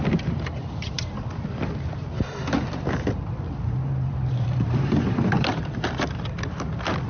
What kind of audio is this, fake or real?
fake